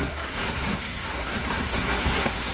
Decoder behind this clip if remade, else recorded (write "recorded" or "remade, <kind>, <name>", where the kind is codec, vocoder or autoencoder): remade, codec, SNAC